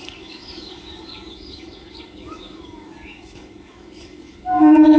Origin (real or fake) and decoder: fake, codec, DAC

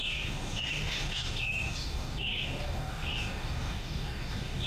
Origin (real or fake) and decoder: fake, codec, DAC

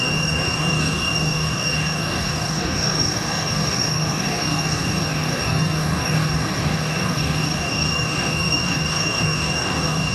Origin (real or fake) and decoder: fake, codec, DAC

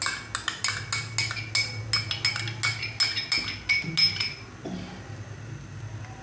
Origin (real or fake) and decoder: real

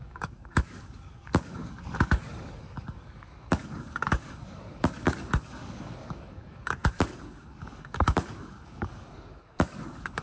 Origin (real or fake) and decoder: fake, codec, DAC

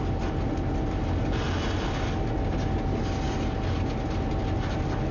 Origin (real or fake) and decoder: real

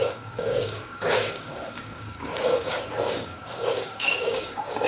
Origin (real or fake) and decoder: fake, codec, DAC